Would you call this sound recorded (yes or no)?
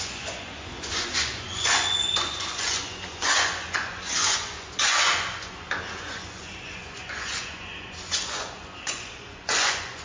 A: no